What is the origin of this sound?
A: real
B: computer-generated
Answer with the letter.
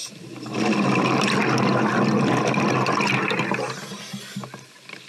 A